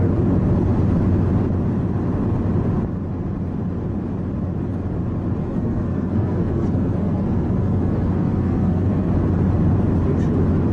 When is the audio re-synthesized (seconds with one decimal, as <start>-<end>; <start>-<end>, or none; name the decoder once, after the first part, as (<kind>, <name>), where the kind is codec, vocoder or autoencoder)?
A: 5.4-9.1 (codec, SNAC)